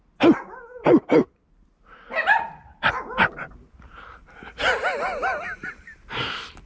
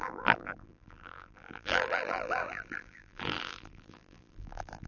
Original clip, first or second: first